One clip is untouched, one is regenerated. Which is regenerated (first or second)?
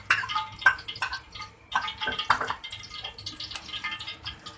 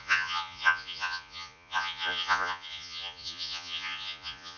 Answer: second